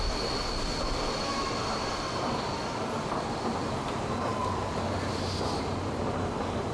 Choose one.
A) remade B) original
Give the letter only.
B